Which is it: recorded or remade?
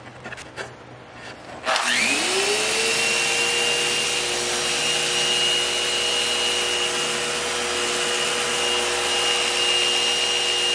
recorded